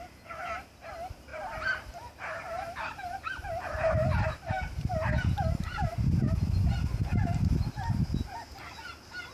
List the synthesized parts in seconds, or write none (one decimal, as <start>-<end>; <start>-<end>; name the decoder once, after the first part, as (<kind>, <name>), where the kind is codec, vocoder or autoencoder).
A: 1.3-4.9 (vocoder, BigVGAN v2)